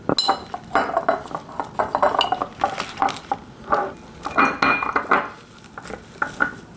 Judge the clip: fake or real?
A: real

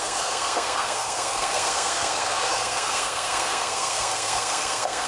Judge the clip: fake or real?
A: fake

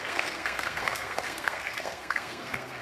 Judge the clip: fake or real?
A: fake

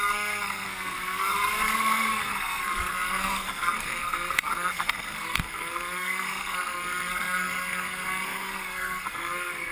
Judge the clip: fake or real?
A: fake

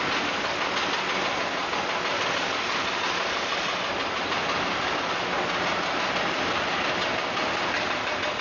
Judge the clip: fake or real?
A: real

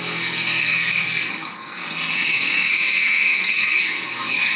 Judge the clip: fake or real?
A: fake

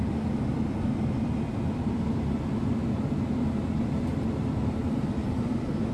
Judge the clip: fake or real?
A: real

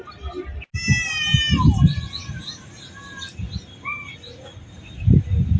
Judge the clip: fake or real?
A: real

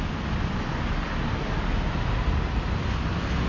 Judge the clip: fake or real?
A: real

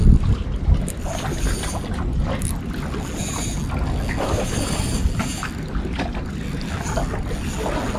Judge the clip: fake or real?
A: real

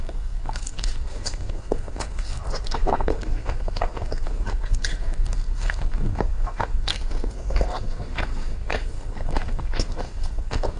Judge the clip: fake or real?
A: fake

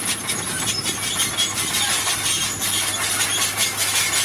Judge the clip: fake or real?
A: real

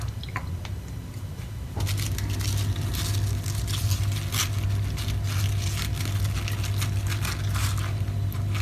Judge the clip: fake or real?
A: real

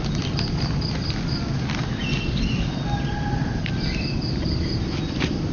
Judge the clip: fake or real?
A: real